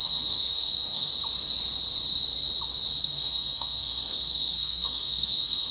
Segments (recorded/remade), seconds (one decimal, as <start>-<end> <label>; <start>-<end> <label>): 0.0-1.1 remade; 1.1-3.0 recorded; 3.0-5.7 remade